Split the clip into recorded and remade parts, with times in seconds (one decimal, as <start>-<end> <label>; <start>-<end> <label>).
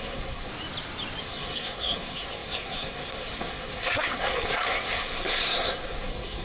0.0-0.5 remade; 0.5-1.2 recorded; 1.2-6.4 remade